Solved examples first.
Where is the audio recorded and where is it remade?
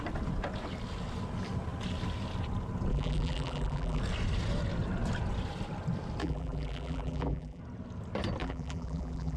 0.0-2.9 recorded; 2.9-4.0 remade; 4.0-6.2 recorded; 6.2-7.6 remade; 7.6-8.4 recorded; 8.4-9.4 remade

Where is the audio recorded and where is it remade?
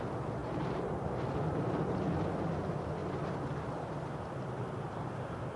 0.0-0.4 recorded; 0.4-1.1 remade; 1.1-3.0 recorded; 3.0-3.5 remade; 3.5-5.6 recorded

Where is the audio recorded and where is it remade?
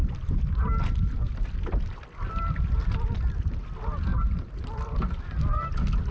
0.0-4.1 recorded; 4.1-5.2 remade; 5.2-6.1 recorded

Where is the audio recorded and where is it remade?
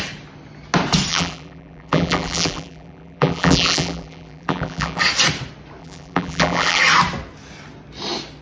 0.0-1.1 recorded; 1.1-5.0 remade; 5.0-5.8 recorded; 5.8-6.8 remade; 6.8-8.4 recorded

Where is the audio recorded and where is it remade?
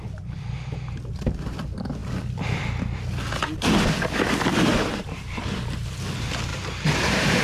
0.0-4.7 recorded; 4.7-5.4 remade; 5.4-6.5 recorded; 6.5-7.4 remade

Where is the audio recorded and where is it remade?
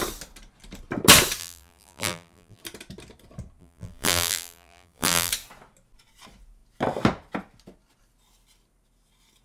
0.0-1.4 recorded; 1.4-2.6 remade; 2.6-3.6 recorded; 3.6-5.3 remade; 5.3-9.4 recorded